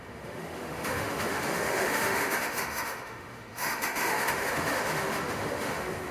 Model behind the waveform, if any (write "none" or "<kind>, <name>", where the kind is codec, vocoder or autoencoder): autoencoder, DAC-VAE